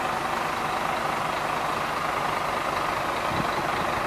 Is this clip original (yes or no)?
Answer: yes